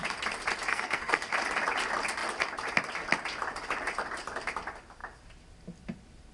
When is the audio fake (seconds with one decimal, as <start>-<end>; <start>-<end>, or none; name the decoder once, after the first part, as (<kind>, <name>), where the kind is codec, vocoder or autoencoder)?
0.7-1.3 (codec, SNAC)